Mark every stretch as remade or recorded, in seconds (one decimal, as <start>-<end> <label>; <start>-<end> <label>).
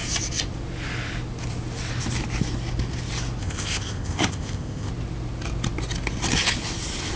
0.0-3.4 recorded; 3.4-4.9 remade; 4.9-7.2 recorded